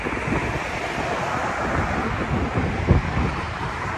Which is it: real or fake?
real